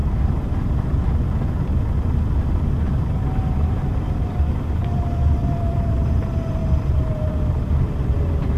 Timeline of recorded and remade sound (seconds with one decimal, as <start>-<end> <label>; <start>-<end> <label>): 0.0-2.8 recorded; 2.8-8.6 remade

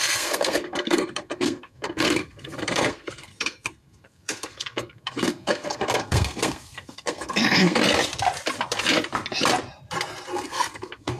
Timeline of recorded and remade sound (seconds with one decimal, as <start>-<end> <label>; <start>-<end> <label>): 0.0-7.8 remade; 7.8-10.3 recorded; 10.3-11.2 remade